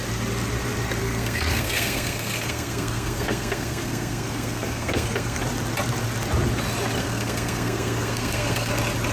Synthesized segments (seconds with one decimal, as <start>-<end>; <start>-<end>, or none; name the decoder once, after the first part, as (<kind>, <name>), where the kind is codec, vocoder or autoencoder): 1.0-5.4 (codec, SNAC); 7.0-8.7